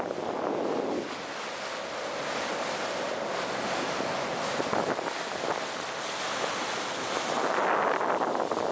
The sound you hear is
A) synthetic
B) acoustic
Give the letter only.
B